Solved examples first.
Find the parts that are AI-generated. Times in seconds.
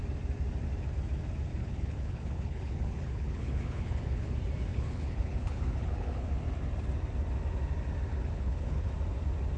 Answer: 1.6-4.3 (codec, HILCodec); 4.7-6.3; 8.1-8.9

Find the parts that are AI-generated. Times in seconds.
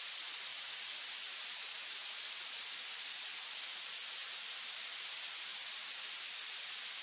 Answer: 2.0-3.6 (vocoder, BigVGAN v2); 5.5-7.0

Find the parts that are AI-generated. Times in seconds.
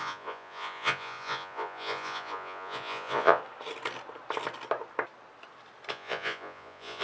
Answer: 0.0-3.4 (vocoder, Vocos); 5.9-7.0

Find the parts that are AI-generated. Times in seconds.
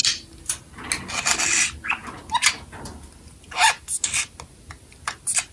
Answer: none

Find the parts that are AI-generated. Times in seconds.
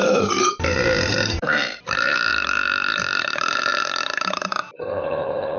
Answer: 0.0-3.7 (vocoder, BigVGAN v2); 4.9-5.6